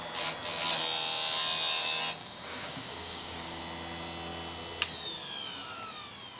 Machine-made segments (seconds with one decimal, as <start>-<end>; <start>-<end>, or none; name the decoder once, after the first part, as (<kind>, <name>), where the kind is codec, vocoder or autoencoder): 2.2-3.6 (codec, DAC)